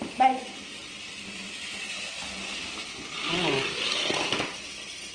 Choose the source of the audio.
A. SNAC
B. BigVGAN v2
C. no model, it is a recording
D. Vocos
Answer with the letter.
C